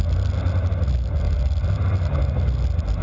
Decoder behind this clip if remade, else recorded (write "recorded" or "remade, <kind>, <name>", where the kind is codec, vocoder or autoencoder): recorded